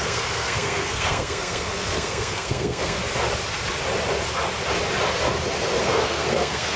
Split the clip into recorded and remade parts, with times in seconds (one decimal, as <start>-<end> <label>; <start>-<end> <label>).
0.0-3.0 remade; 3.0-5.8 recorded; 5.8-6.8 remade